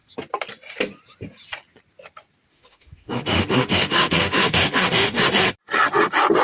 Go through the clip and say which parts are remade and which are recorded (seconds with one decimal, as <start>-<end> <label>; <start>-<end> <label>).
0.0-2.5 recorded; 2.5-5.2 remade; 5.2-6.4 recorded